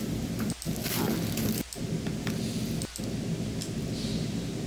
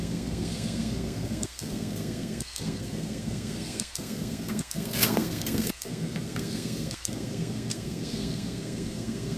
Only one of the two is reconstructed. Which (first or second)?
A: second